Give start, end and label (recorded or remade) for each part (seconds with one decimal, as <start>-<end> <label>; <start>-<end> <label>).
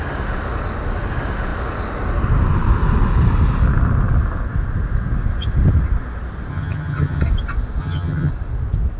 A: 0.0-6.5 recorded; 6.5-7.2 remade; 7.2-7.8 recorded; 7.8-8.3 remade; 8.3-9.0 recorded